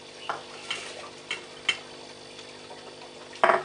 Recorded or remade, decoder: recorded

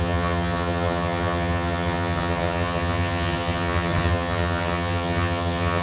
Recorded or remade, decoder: remade, vocoder, HiFi-GAN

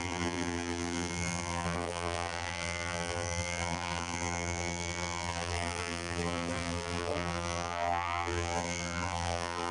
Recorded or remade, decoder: remade, vocoder, BigVGAN v2